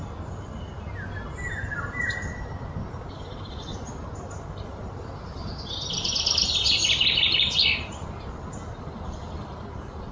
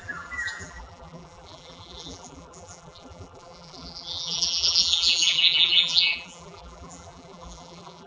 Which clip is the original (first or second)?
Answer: first